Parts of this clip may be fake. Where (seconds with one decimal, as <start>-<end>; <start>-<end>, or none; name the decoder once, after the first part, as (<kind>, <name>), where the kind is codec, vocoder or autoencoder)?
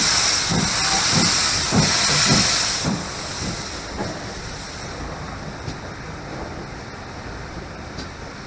none